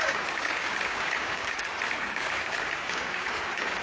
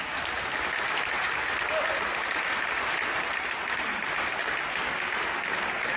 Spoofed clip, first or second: first